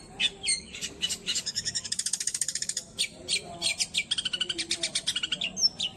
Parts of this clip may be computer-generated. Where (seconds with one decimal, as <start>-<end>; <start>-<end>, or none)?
0.5-3.0